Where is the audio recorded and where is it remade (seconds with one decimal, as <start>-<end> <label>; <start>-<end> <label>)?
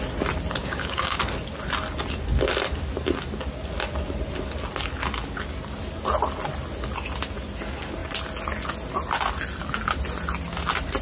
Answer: 0.0-0.6 recorded; 0.6-1.2 remade; 1.2-11.0 recorded